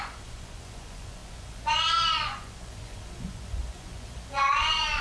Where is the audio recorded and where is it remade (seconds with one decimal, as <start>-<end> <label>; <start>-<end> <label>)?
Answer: 0.0-5.0 remade